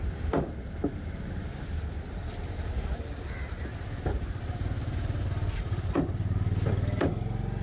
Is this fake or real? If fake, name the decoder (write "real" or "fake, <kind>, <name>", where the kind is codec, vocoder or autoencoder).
real